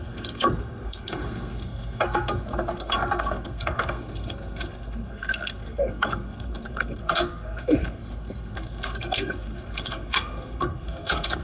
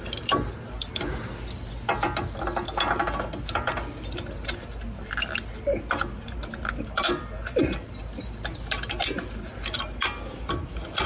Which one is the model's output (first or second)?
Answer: first